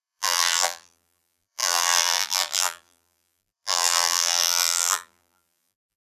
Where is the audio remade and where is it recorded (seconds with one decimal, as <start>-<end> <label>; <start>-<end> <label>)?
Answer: 0.0-6.1 remade